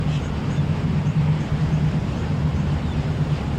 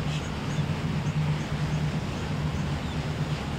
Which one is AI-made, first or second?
first